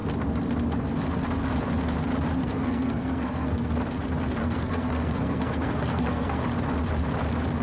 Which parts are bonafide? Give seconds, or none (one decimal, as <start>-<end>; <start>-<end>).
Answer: 0.0-2.4; 3.7-4.4; 6.4-7.6